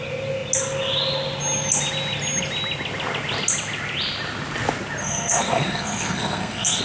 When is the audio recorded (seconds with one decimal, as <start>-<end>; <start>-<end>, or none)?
0.0-5.0